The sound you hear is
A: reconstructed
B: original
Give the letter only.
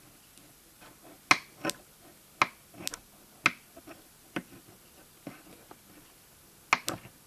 B